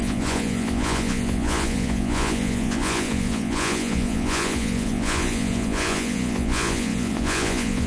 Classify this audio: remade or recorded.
remade